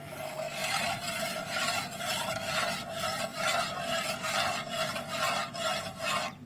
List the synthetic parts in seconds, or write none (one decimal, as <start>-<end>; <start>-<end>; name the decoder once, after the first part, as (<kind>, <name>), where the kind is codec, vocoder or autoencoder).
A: 0.6-2.6 (vocoder, BigVGAN v2); 3.3-4.0